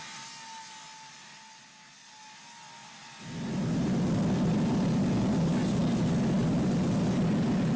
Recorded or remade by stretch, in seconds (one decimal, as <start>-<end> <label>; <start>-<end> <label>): 0.0-7.8 recorded